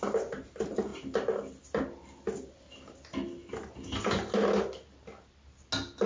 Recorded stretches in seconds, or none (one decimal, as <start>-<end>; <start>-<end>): 0.0-6.1